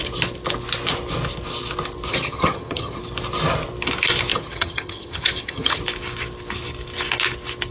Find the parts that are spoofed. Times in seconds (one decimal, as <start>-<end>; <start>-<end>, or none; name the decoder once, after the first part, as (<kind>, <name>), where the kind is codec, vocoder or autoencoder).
2.1-3.0 (vocoder, HiFi-GAN); 4.3-5.8